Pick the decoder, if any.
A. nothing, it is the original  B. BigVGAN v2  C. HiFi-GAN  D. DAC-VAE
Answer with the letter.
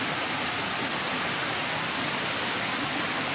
A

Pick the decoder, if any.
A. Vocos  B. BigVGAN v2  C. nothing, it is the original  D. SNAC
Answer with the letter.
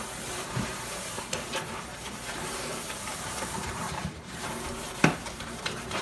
B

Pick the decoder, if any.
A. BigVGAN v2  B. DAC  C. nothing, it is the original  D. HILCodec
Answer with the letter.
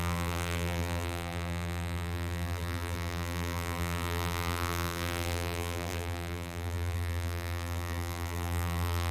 A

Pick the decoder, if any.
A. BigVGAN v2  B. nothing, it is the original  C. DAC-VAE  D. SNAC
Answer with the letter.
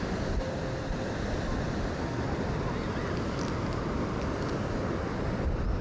B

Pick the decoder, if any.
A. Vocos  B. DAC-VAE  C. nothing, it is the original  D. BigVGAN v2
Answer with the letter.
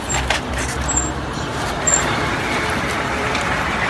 D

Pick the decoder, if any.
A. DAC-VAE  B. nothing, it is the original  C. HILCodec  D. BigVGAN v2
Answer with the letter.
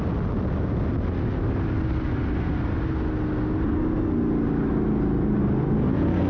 B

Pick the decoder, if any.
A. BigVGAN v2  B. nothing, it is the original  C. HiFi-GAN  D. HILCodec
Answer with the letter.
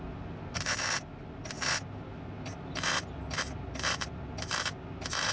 B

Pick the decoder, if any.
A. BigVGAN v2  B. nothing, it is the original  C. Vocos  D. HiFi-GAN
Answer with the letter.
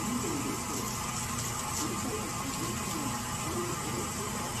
B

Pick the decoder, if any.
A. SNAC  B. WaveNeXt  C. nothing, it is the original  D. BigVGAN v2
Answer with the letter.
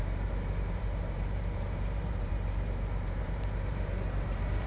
D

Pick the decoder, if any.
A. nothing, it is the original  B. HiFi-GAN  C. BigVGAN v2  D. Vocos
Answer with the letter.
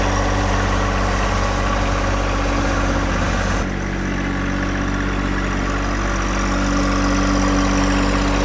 A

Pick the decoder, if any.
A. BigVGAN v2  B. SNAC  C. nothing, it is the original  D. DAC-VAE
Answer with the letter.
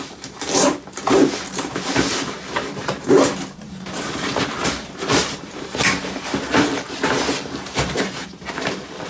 A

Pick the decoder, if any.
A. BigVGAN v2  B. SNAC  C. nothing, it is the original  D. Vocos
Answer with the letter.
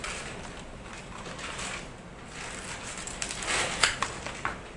C